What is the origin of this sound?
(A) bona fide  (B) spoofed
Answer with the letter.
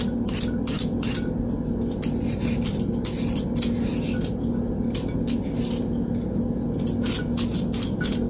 A